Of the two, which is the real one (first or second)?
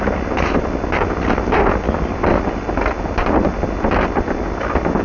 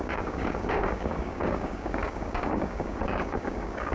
first